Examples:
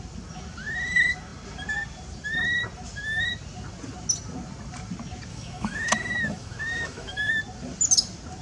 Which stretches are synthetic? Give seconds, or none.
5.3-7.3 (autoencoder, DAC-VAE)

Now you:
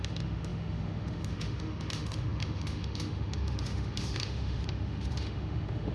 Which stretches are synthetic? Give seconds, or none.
0.0-5.9 (autoencoder, DAC-VAE)

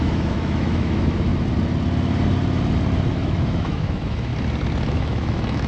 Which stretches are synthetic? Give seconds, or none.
0.0-1.3 (autoencoder, DAC-VAE); 3.1-4.3; 4.9-5.7

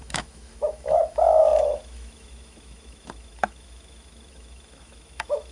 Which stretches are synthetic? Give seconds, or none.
0.0-5.5 (autoencoder, DAC-VAE)

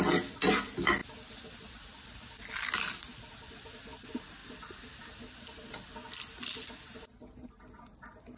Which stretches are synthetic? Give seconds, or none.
none

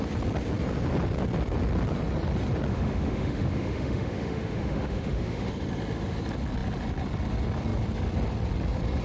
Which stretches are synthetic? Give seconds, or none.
2.7-5.5 (autoencoder, DAC-VAE)

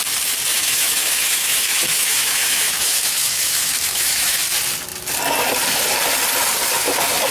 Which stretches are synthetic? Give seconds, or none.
0.5-4.4 (autoencoder, DAC-VAE)